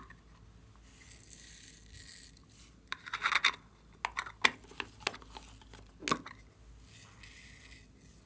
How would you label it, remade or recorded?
recorded